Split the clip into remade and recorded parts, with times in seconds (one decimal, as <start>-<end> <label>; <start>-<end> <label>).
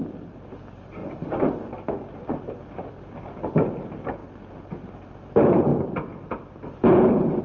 0.0-4.2 remade; 4.2-5.3 recorded; 5.3-5.7 remade; 5.7-7.4 recorded